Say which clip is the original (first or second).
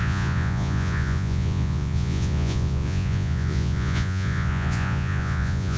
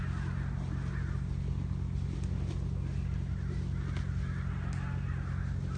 second